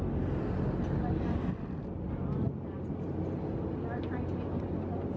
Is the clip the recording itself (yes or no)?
yes